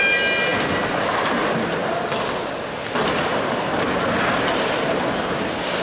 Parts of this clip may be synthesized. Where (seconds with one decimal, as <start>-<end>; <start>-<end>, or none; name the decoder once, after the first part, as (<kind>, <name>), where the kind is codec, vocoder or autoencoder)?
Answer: 0.5-2.1 (vocoder, BigVGAN v2)